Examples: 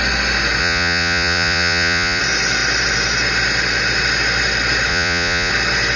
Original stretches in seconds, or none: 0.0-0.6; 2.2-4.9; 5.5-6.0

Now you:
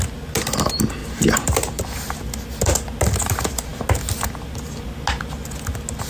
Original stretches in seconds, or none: 0.0-1.0; 1.8-6.1

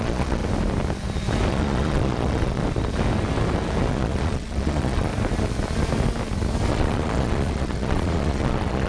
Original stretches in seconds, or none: 0.4-1.5; 2.6-3.9; 5.1-6.7

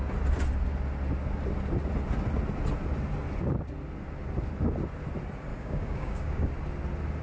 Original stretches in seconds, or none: 0.0-5.5; 6.5-7.2

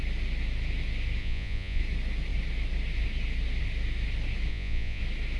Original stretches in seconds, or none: 0.0-1.2; 1.8-4.5; 5.0-5.4

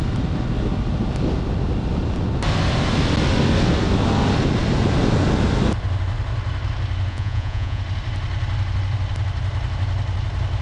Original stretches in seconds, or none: 0.0-7.1; 7.8-10.6

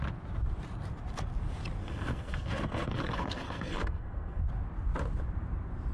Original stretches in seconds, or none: 0.0-1.8; 4.4-5.9

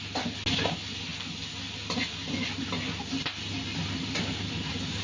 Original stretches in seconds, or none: 0.0-5.0